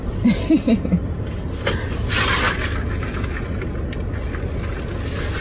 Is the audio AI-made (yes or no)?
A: no